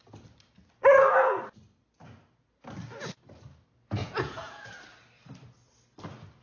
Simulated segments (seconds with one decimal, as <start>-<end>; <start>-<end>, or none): 4.0-4.7

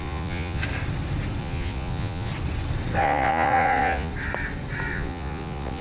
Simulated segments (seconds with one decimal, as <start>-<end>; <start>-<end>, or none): 0.0-0.6; 1.4-2.3; 3.0-4.1; 4.9-5.8

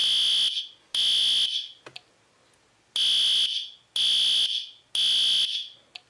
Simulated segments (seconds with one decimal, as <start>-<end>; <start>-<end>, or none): none

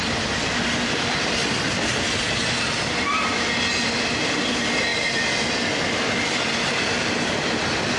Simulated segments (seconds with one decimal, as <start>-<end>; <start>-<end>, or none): 0.0-1.4; 3.7-8.0